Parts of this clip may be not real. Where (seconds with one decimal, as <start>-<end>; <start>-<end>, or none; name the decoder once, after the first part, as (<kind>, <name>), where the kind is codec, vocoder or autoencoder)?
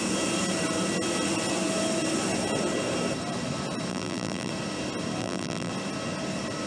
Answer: 3.9-4.5 (vocoder, BigVGAN v2); 5.2-5.7